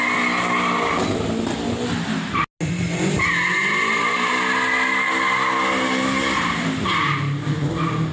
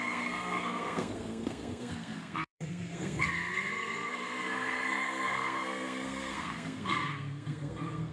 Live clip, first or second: first